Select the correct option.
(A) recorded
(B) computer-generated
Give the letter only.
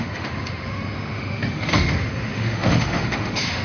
B